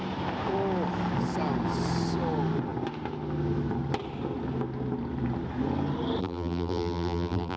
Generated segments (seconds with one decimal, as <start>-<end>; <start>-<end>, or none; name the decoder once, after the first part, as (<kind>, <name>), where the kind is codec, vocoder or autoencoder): 6.2-7.6 (vocoder, BigVGAN v2)